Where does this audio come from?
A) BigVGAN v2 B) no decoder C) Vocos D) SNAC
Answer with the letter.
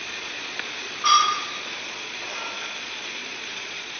C